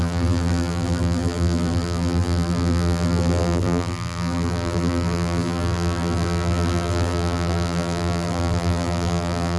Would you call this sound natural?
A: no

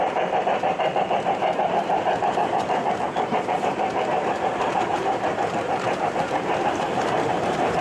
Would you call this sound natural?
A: no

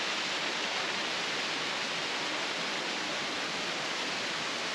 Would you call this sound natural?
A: yes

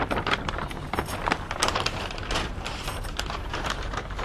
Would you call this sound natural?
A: no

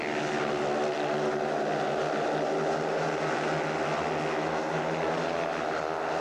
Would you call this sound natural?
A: yes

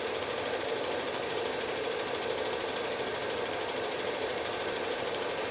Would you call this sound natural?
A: no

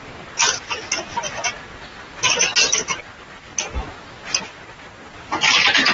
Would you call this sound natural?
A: yes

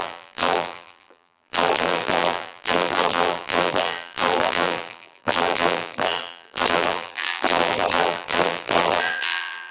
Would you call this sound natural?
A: no